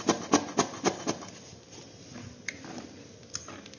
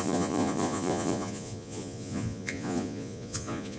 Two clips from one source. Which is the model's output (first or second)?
second